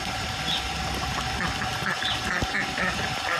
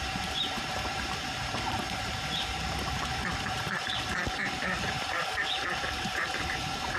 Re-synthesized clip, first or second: second